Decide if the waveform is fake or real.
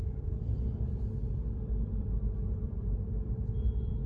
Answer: fake